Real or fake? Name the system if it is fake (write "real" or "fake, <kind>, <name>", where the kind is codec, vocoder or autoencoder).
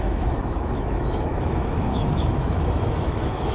fake, autoencoder, DAC-VAE